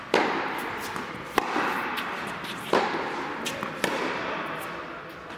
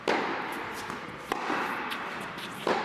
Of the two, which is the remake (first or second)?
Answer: first